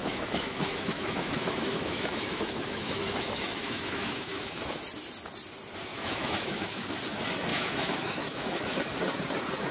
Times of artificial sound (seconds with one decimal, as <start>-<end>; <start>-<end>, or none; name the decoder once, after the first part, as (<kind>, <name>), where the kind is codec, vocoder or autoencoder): 0.0-4.8 (autoencoder, DAC-VAE); 5.9-6.9; 7.5-8.8